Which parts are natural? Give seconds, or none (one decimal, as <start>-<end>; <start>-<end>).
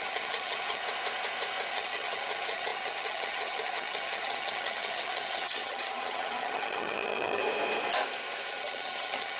0.8-1.7; 7.4-8.5